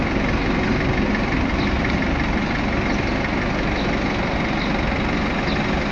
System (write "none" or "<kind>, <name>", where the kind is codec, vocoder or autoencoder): none